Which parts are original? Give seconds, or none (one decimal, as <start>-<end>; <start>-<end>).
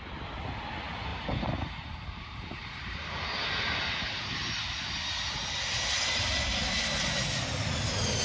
0.0-1.1; 3.2-8.2